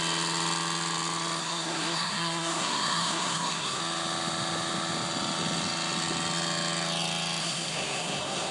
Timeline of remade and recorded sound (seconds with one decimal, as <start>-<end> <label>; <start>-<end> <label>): 0.0-1.4 recorded; 1.4-3.8 remade; 3.8-7.4 recorded; 7.4-8.5 remade